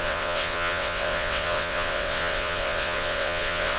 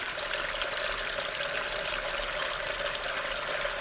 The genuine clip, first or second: second